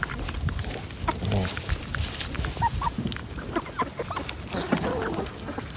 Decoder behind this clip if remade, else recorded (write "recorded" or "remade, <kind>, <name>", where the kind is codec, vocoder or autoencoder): recorded